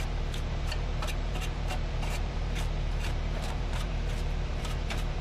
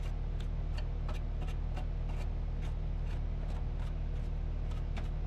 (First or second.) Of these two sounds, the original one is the second